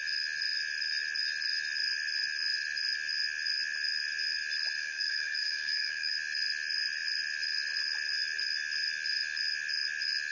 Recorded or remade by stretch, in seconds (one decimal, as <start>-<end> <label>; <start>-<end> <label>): 0.0-4.8 recorded; 4.8-6.1 remade; 6.1-10.3 recorded